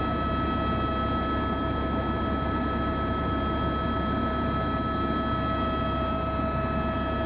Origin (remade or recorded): recorded